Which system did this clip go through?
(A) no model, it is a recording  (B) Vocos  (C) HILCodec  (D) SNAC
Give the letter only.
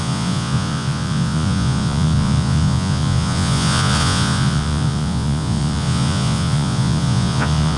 B